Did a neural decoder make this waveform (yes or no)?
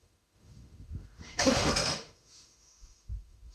yes